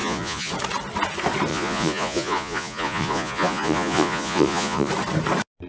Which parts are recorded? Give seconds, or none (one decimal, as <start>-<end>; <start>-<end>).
0.5-1.5; 4.9-5.7